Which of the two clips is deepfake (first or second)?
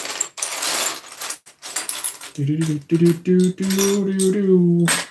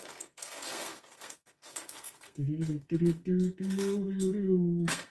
second